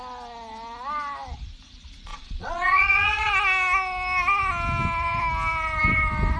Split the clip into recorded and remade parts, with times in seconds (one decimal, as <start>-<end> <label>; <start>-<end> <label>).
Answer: 0.0-2.1 recorded; 2.1-3.3 remade; 3.3-6.4 recorded